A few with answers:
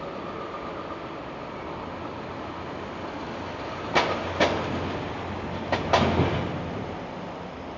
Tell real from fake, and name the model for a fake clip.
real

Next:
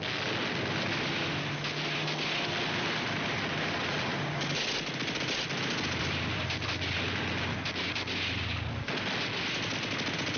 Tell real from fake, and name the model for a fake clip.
real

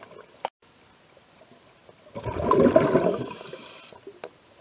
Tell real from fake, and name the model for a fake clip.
real